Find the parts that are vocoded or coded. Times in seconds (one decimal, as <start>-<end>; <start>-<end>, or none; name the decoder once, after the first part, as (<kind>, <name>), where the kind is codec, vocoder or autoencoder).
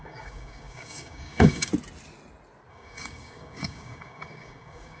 0.0-1.7 (codec, DAC); 2.7-5.0